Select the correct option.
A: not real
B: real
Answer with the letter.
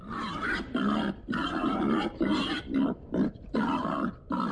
A